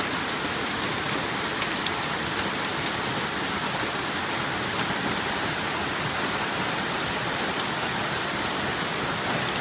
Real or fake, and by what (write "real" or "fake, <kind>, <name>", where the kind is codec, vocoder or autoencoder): real